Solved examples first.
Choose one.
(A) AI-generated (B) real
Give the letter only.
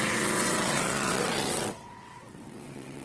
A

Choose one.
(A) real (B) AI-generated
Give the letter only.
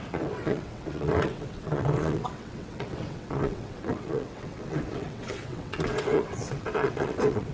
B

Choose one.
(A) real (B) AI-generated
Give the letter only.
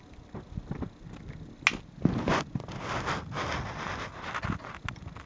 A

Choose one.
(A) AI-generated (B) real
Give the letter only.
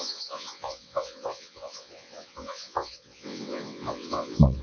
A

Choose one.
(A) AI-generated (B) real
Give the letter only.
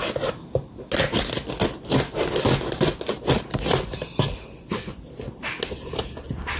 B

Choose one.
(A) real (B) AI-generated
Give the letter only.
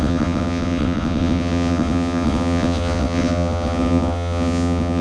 B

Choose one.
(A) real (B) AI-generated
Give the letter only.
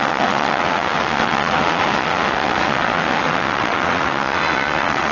B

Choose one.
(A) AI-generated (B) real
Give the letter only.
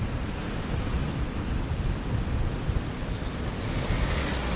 B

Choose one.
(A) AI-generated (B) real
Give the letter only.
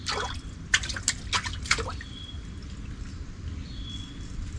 B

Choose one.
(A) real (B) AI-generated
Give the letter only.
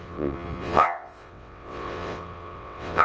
B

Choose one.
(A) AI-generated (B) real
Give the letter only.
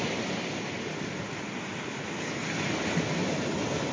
B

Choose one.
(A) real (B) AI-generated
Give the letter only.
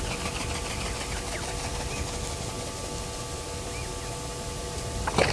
A